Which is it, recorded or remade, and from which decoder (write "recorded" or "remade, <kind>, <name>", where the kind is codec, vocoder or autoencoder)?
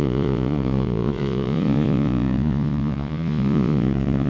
remade, vocoder, Vocos